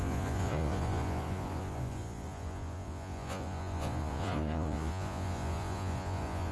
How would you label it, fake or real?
fake